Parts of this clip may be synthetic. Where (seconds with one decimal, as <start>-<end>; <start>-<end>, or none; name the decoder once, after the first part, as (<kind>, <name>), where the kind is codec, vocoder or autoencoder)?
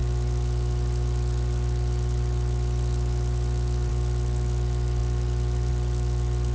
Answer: none